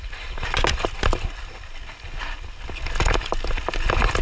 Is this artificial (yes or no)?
no